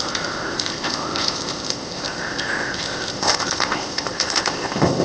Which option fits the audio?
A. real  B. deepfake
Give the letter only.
B